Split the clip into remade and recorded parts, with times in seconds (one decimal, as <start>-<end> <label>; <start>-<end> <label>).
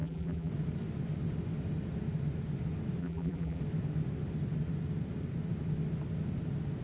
0.0-0.5 remade; 0.5-3.0 recorded; 3.0-3.6 remade; 3.6-6.8 recorded